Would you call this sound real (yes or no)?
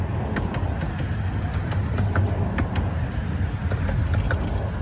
yes